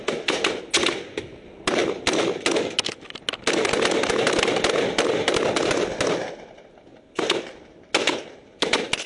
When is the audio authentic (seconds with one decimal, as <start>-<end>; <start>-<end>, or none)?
0.0-9.1

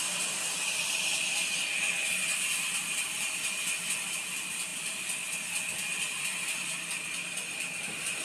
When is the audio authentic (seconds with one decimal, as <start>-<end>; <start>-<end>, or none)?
0.0-8.2

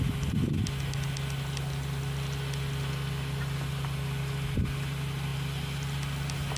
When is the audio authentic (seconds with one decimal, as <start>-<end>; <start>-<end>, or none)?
0.0-6.6

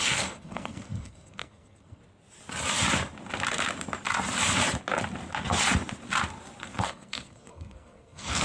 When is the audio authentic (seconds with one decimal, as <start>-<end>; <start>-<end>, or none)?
2.0-6.6

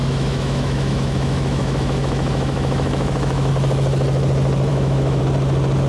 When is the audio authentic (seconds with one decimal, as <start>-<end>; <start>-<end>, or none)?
3.5-4.7; 5.2-5.9

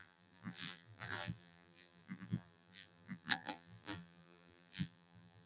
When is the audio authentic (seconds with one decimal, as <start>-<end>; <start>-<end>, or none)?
none